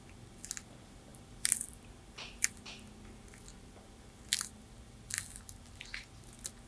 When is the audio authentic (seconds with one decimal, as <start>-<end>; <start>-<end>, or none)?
0.0-6.7